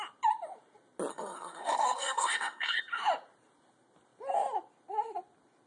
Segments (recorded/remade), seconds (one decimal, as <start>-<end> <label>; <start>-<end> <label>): 0.0-1.1 recorded; 1.1-2.8 remade; 2.8-5.7 recorded